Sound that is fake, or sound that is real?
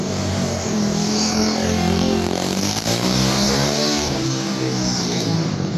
fake